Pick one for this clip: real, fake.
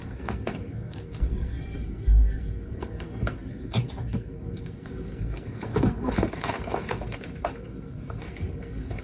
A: fake